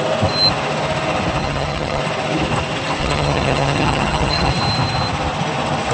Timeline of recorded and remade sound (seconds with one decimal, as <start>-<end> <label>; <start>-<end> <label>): 0.0-1.4 recorded; 1.4-2.0 remade; 2.0-3.0 recorded; 3.0-4.5 remade; 4.5-5.9 recorded